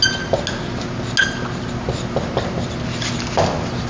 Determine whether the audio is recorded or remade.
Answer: recorded